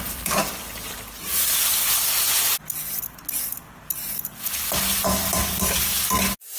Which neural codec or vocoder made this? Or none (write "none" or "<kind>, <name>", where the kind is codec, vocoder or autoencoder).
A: none